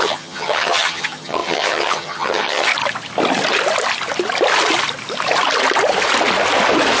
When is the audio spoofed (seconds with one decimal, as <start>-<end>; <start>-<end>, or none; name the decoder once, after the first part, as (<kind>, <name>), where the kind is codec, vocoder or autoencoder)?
0.0-2.7 (vocoder, HiFi-GAN)